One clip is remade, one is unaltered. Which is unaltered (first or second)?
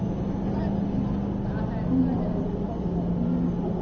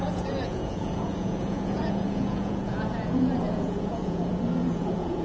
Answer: first